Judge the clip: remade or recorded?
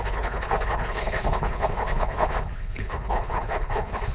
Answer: remade